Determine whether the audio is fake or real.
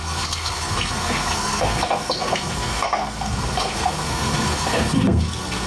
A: fake